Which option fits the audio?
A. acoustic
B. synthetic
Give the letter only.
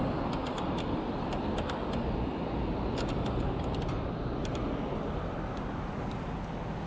A